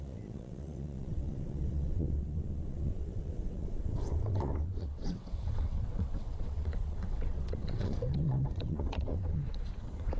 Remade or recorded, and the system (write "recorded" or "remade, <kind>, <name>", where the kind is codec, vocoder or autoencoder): remade, vocoder, WaveNeXt